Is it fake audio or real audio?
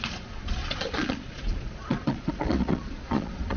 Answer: fake